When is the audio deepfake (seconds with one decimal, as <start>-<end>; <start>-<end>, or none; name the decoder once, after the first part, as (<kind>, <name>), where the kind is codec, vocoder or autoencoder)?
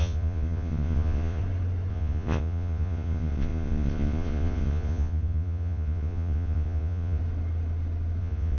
0.0-1.4 (vocoder, Vocos); 1.9-7.2; 8.2-8.6